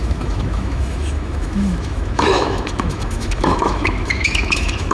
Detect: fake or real fake